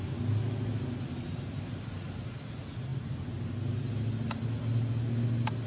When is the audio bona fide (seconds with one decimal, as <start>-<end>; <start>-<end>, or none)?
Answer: 0.0-5.7

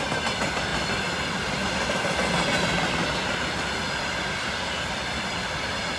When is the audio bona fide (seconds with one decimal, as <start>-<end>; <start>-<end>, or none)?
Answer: 0.0-6.0

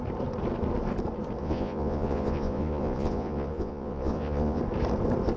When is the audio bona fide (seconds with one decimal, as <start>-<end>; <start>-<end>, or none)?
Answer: 0.0-1.4; 4.6-5.4

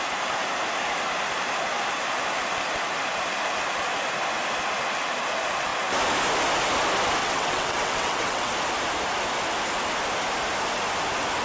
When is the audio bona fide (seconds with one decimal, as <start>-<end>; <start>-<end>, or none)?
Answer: 0.0-7.2; 8.5-11.4

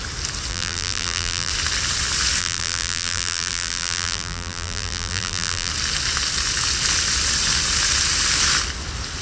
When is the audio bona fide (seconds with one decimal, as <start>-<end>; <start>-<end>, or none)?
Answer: 0.0-0.5; 1.5-2.4; 5.7-9.2

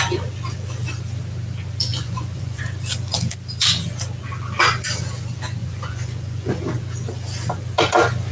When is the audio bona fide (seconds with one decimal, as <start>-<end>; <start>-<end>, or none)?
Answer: 0.0-1.9; 2.6-5.6; 6.6-8.3

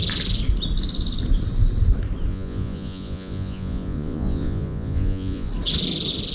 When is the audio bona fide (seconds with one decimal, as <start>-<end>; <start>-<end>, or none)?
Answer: 0.0-2.3; 5.5-6.3

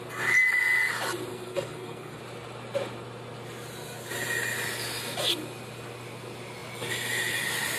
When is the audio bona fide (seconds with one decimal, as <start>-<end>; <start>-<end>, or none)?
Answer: 0.0-1.3; 2.2-7.8